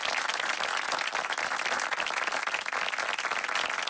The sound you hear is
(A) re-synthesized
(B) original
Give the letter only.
B